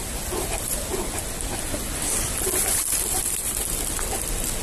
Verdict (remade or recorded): recorded